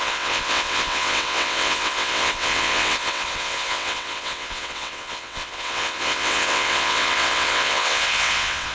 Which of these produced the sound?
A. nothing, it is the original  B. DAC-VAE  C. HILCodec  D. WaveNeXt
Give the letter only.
D